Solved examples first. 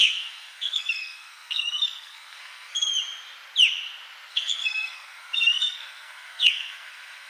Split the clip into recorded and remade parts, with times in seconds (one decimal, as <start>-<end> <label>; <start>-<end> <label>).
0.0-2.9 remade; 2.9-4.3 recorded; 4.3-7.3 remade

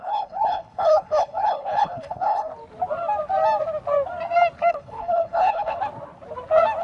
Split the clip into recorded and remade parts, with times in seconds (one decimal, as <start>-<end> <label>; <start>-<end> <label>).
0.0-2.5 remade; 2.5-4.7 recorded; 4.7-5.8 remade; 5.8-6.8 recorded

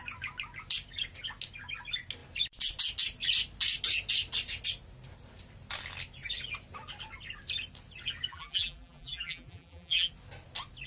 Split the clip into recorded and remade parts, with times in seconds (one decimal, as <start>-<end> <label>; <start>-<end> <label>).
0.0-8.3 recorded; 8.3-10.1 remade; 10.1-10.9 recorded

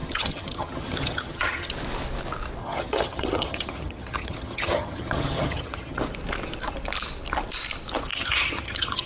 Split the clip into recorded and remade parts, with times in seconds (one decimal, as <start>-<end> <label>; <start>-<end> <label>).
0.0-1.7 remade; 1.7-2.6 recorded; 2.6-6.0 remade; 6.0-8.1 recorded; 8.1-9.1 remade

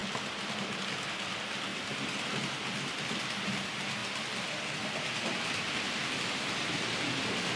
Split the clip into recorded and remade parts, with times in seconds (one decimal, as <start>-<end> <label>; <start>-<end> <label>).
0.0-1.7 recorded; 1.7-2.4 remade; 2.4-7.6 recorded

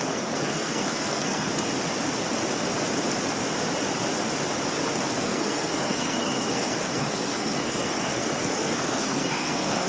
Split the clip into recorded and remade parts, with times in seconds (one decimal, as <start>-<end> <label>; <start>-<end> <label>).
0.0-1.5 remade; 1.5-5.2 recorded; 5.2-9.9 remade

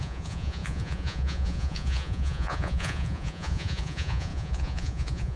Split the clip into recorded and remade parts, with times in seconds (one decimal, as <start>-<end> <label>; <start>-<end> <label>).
0.0-5.4 remade